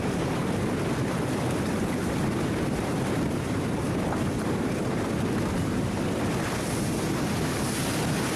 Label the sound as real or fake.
fake